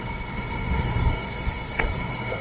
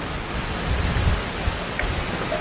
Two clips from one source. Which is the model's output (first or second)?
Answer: first